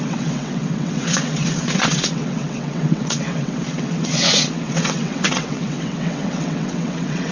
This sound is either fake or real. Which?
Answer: fake